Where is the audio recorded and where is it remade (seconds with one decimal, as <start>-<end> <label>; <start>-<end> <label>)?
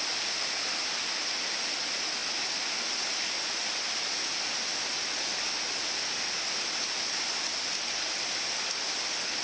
0.0-9.4 recorded